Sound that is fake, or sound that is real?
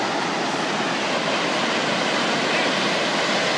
real